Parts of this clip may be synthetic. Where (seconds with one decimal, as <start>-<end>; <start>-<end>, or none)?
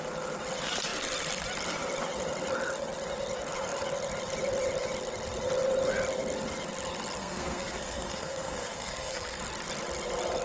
7.2-9.4